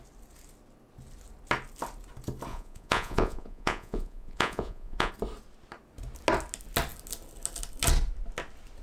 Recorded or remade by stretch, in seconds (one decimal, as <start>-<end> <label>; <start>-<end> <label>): 0.0-2.5 recorded; 2.5-5.1 remade; 5.1-8.8 recorded